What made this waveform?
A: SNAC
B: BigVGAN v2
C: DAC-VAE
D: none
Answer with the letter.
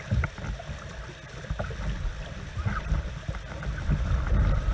D